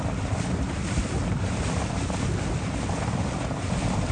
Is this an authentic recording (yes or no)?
yes